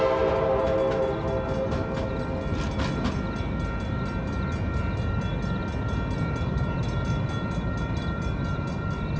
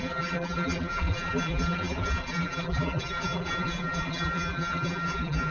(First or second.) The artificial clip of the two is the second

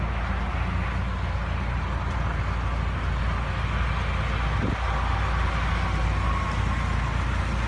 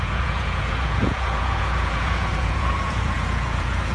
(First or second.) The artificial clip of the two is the second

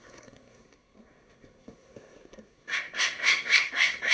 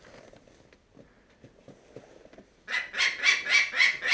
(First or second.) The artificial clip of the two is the first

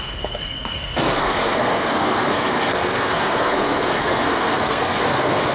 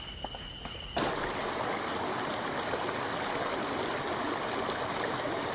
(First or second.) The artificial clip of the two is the first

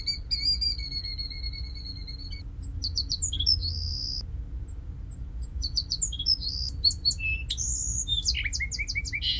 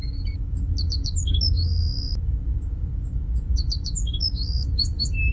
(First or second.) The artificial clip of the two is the second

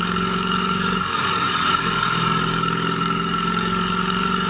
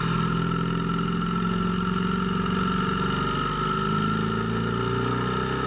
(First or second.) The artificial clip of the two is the first